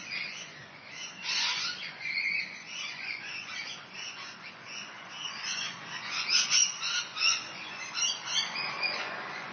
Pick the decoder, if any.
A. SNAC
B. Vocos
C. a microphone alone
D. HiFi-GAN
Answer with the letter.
B